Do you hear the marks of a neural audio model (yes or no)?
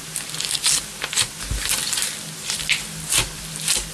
no